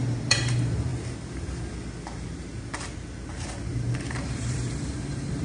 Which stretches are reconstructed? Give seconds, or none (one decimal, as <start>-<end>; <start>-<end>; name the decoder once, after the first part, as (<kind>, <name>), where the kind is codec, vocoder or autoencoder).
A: 0.0-0.9 (vocoder, BigVGAN v2); 4.1-5.4